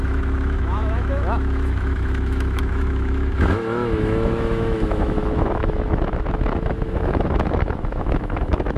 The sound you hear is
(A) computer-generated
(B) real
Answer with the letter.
A